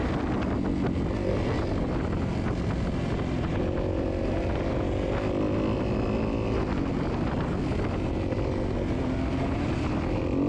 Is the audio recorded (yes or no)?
yes